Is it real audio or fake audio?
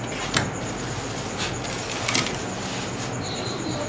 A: real